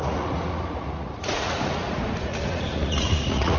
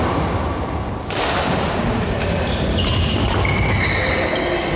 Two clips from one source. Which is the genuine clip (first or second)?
second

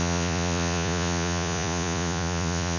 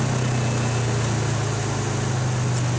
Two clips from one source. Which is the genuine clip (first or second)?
second